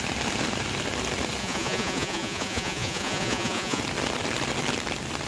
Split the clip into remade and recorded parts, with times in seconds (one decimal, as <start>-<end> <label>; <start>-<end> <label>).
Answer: 0.0-1.4 recorded; 1.4-3.8 remade; 3.8-5.3 recorded